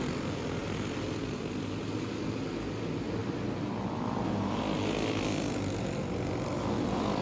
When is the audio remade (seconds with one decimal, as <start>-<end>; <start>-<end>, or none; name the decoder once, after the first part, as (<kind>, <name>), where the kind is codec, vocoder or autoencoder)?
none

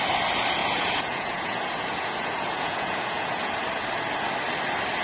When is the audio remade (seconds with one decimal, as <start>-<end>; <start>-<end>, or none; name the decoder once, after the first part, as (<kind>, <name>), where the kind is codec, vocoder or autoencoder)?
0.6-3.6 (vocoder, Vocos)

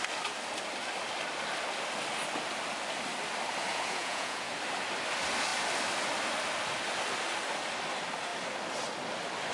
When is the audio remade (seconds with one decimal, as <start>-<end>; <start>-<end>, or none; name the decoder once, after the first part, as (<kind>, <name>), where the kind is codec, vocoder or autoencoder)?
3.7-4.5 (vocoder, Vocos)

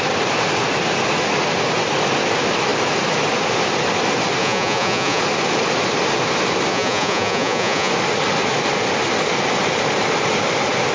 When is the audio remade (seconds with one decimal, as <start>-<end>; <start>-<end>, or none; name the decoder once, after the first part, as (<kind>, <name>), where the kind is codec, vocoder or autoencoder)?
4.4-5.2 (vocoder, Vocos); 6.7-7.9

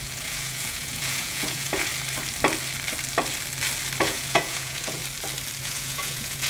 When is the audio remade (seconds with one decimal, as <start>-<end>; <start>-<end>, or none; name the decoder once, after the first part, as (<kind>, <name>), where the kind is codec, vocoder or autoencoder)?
0.0-1.9 (vocoder, Vocos); 4.0-5.0; 5.6-6.5

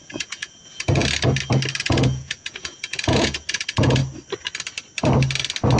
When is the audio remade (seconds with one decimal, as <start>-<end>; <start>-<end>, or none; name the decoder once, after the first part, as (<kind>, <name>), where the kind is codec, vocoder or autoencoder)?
0.0-1.0 (vocoder, Vocos); 1.8-4.0